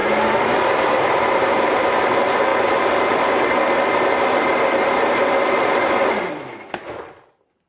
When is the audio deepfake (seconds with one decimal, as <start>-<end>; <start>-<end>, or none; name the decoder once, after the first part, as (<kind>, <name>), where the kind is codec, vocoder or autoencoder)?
0.0-1.8 (vocoder, BigVGAN v2)